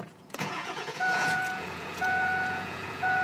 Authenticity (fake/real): fake